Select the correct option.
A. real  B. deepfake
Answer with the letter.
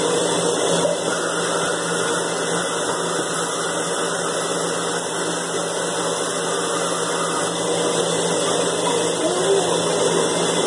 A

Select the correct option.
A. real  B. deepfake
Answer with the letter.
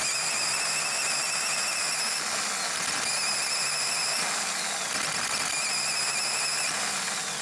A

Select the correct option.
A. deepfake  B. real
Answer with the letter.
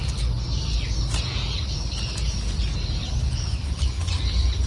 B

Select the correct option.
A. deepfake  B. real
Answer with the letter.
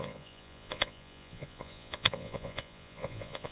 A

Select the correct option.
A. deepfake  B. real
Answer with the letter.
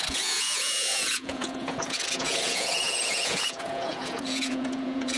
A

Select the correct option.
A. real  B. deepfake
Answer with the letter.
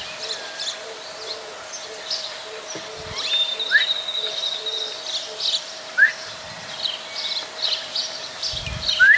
A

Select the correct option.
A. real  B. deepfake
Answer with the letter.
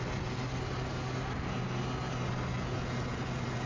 A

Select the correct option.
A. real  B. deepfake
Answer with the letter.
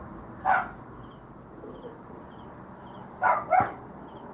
A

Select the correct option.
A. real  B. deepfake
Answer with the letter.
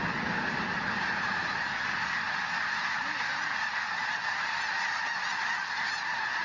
A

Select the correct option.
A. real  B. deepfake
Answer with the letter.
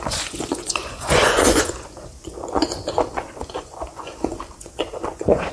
B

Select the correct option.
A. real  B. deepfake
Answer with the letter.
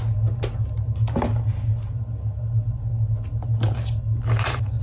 A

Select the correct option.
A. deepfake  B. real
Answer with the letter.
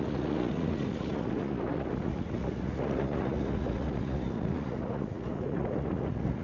A